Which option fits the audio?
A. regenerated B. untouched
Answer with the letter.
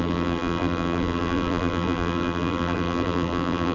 A